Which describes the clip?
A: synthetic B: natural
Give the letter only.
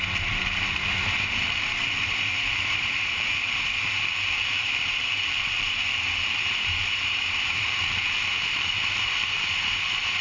A